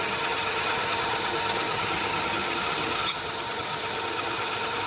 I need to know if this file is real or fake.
fake